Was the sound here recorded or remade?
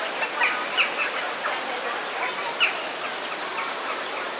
recorded